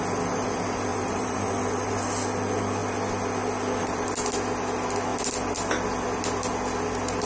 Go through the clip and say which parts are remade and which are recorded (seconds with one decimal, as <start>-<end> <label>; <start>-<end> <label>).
0.0-0.9 recorded; 0.9-1.6 remade; 1.6-7.3 recorded